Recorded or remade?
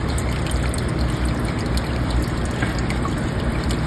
remade